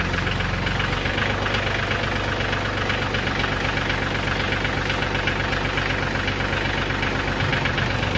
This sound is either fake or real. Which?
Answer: real